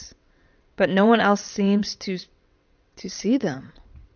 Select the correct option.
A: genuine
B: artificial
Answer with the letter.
B